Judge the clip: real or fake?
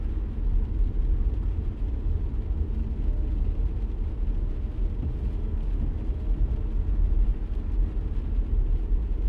real